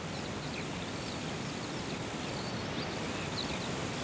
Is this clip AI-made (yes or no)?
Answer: no